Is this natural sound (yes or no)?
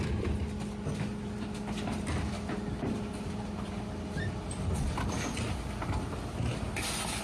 yes